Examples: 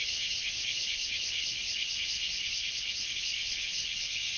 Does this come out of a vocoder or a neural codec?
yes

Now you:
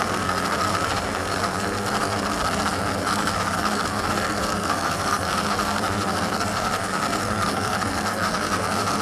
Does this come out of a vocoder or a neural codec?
yes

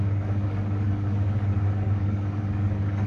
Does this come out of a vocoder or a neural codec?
yes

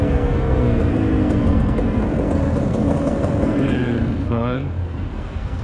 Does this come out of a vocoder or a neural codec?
yes